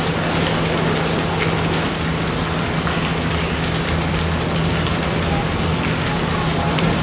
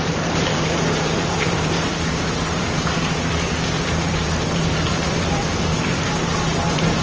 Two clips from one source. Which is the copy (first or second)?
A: second